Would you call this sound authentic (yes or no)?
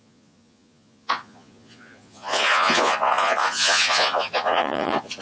no